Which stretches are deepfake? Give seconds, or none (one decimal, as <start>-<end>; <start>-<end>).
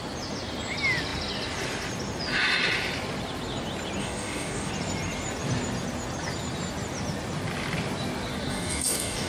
4.0-4.7; 8.5-9.3